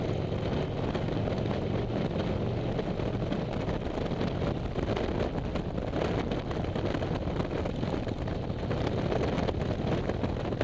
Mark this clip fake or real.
real